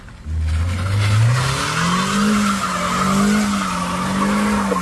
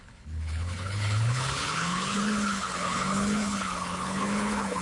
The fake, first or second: second